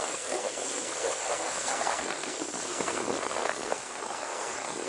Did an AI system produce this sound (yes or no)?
yes